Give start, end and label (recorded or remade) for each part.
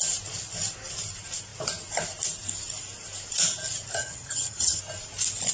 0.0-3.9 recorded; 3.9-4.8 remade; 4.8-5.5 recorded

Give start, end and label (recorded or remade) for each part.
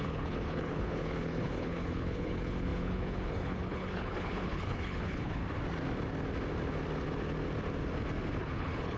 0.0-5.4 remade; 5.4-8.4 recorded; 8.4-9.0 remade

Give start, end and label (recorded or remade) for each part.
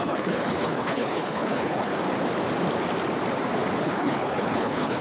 0.0-1.9 remade; 1.9-3.8 recorded; 3.8-5.0 remade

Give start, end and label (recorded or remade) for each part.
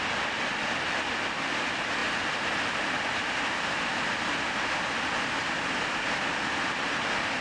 0.0-7.4 recorded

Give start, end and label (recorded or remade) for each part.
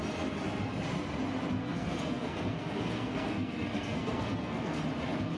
0.0-1.6 recorded; 1.6-4.8 remade; 4.8-5.4 recorded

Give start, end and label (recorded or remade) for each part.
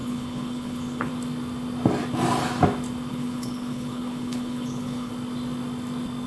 0.0-1.1 remade; 1.1-3.1 recorded; 3.1-5.1 remade; 5.1-6.3 recorded